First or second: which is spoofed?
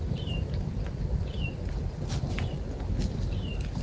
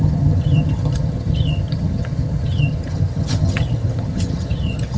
second